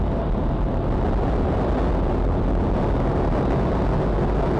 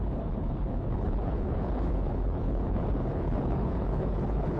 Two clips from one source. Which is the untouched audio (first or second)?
first